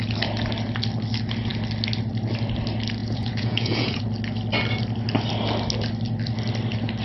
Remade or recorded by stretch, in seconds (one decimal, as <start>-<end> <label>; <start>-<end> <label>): 0.0-3.0 recorded; 3.0-4.0 remade; 4.0-7.0 recorded

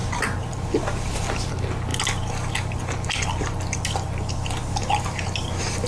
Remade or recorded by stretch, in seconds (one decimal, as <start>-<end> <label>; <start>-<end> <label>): 0.0-5.9 recorded

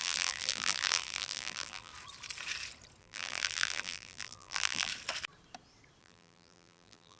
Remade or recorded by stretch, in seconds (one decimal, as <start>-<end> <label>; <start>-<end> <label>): 0.0-1.9 remade; 1.9-3.0 recorded; 3.0-4.9 remade; 4.9-6.0 recorded; 6.0-7.2 remade